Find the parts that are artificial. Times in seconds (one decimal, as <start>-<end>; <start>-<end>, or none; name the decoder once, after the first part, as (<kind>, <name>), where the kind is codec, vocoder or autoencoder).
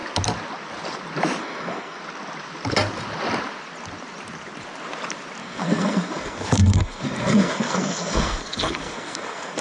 1.4-2.0 (codec, SNAC); 5.4-9.6